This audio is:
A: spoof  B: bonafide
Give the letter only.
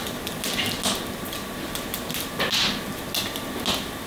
B